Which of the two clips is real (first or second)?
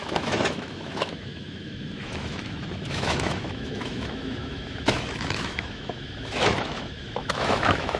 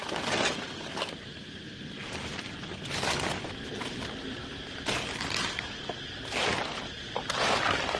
second